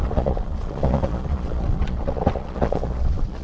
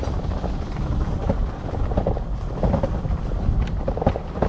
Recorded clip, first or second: second